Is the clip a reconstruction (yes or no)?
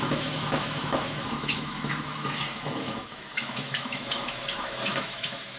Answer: yes